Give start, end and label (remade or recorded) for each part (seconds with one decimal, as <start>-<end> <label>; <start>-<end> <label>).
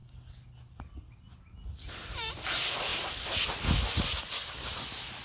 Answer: 0.0-5.2 recorded